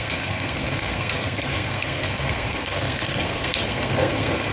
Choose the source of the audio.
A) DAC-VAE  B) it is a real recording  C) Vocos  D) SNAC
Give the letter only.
D